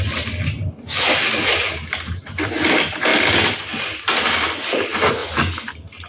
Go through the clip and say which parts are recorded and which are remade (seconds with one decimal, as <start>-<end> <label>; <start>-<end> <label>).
0.0-6.1 recorded